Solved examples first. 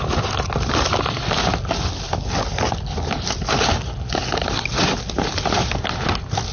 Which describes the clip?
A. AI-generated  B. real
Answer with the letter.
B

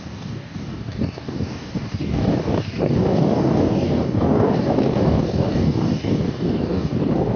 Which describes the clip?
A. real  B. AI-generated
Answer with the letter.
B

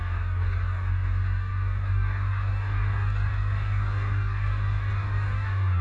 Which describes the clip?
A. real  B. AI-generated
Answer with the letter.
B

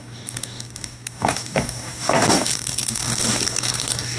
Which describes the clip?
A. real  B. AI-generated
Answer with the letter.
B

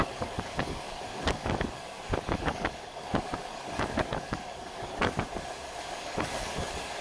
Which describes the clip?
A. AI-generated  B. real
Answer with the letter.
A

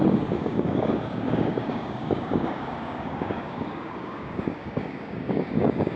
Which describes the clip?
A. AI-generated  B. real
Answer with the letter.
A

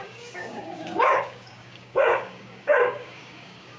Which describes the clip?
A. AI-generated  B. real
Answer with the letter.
A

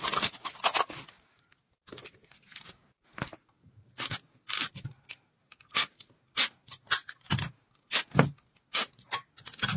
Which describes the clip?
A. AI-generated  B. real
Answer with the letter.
B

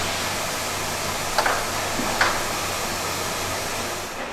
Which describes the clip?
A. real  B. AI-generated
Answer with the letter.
A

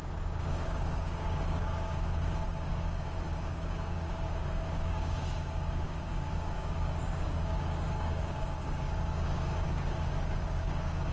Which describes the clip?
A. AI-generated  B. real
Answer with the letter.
A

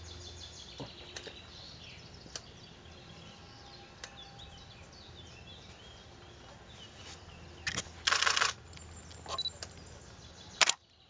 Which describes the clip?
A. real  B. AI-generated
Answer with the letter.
A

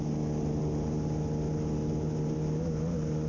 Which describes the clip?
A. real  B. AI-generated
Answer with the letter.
A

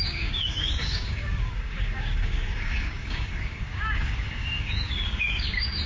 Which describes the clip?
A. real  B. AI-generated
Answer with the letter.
B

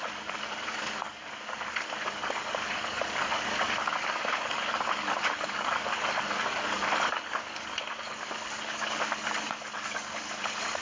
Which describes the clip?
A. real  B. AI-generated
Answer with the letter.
B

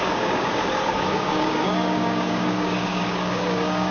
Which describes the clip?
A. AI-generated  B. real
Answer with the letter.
A